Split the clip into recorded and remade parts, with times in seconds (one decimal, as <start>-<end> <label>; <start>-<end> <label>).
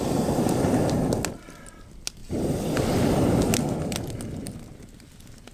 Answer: 0.0-5.5 recorded